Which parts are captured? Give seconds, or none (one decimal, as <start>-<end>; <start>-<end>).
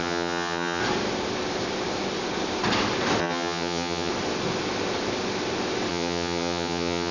0.8-3.2; 4.1-5.9